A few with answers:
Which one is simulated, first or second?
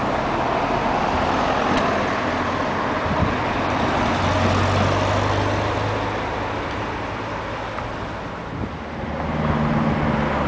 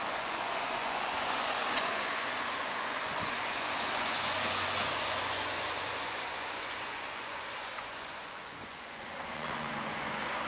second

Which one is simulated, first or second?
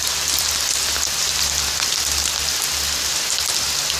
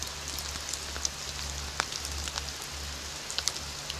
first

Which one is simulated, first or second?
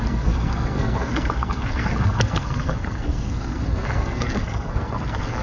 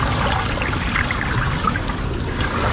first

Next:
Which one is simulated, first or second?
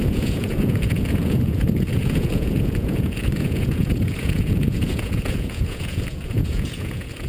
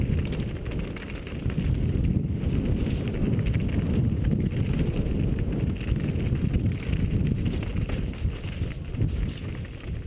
first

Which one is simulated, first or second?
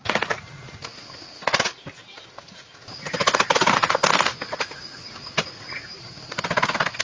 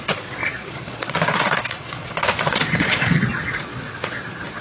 second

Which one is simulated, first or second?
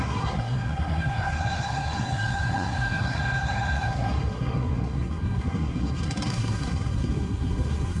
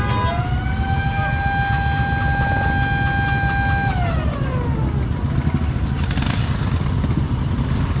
first